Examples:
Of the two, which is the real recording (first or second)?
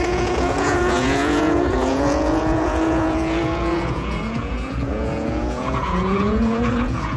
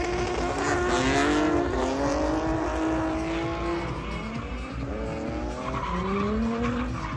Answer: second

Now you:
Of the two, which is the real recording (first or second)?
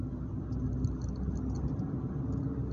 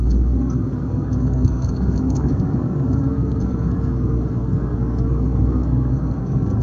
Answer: first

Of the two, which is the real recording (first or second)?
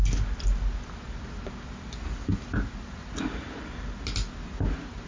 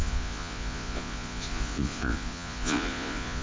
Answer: first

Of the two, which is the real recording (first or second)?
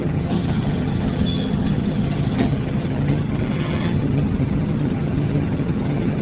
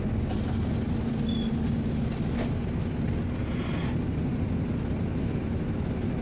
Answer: second